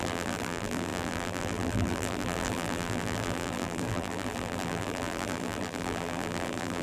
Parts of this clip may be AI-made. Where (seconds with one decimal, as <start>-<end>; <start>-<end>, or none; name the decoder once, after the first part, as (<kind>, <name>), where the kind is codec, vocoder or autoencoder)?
0.0-6.8 (vocoder, BigVGAN v2)